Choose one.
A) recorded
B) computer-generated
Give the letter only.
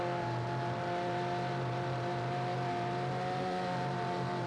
B